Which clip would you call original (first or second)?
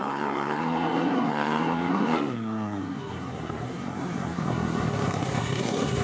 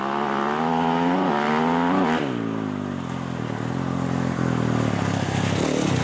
second